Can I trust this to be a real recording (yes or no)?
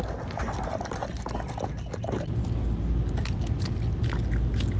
yes